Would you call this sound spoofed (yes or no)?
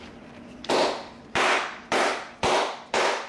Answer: yes